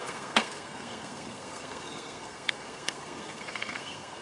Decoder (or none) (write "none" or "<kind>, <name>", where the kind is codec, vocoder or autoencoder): codec, SNAC